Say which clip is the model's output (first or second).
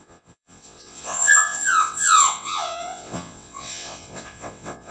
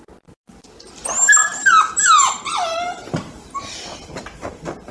first